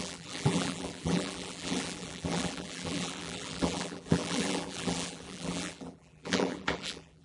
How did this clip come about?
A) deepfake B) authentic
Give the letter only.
A